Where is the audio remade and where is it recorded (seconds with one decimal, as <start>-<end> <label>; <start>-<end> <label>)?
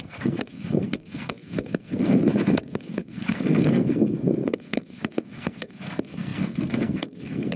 0.0-7.6 remade